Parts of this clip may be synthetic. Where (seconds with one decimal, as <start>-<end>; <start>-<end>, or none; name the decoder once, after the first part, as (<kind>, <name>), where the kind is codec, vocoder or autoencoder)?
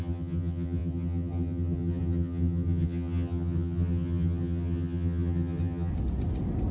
0.0-5.9 (vocoder, HiFi-GAN)